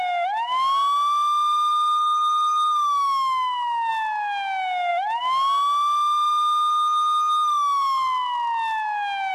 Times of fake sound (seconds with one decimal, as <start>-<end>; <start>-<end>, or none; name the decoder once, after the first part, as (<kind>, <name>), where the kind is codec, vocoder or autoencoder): 1.7-3.9 (autoencoder, DAC-VAE)